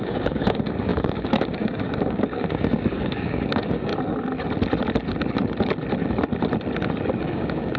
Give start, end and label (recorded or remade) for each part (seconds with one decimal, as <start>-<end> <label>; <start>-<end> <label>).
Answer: 0.0-3.9 remade; 3.9-7.2 recorded; 7.2-7.8 remade